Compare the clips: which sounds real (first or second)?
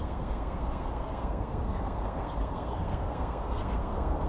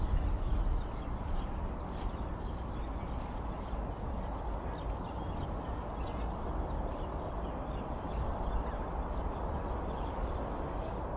second